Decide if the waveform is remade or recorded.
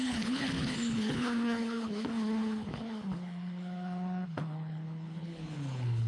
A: remade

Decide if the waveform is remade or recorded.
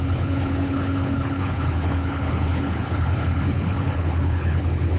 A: remade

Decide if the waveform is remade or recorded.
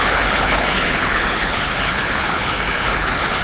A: remade